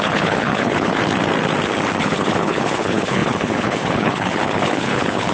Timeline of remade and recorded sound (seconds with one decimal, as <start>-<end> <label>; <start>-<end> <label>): 0.0-1.0 remade; 1.0-2.0 recorded; 2.0-5.3 remade

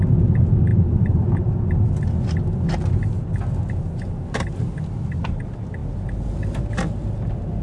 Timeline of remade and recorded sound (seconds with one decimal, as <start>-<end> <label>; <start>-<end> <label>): 0.0-7.6 recorded

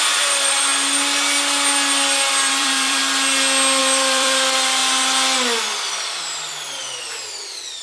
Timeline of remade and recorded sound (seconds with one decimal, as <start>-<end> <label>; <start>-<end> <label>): 0.0-0.7 remade; 0.7-2.5 recorded; 2.5-3.0 remade; 3.0-3.8 recorded; 3.8-4.8 remade; 4.8-5.6 recorded; 5.6-7.8 remade

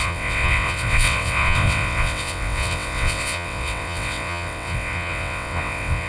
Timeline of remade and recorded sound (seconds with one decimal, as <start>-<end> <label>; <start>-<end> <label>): 0.0-6.1 remade

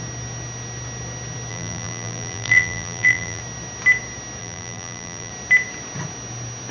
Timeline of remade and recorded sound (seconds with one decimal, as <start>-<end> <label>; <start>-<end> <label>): 0.0-1.5 recorded; 1.5-3.4 remade; 3.4-4.4 recorded; 4.4-5.3 remade; 5.3-6.7 recorded

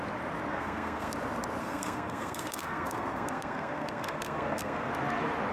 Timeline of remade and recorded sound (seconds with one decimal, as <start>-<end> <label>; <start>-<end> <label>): 0.0-0.5 recorded; 0.5-1.1 remade; 1.1-1.6 recorded; 1.6-4.9 remade; 4.9-5.5 recorded

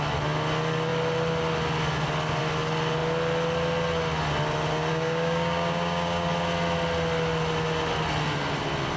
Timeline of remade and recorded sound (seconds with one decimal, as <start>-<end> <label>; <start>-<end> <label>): 0.0-4.9 recorded; 4.9-6.3 remade; 6.3-9.0 recorded